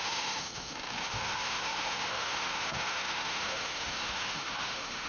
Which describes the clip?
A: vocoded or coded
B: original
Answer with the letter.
A